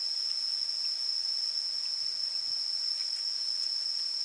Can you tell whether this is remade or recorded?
recorded